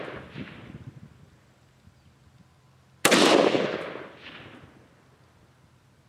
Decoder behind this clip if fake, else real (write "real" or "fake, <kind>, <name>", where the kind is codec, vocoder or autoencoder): real